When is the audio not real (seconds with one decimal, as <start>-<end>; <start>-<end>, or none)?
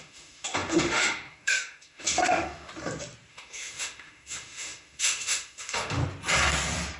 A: 0.0-2.7; 3.3-6.0